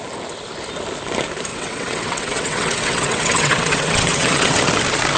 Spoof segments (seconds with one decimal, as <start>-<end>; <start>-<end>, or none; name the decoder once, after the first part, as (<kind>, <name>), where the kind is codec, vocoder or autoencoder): 1.5-4.6 (vocoder, WaveNeXt)